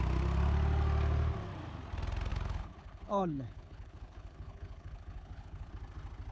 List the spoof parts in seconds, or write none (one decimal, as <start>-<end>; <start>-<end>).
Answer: 2.3-5.7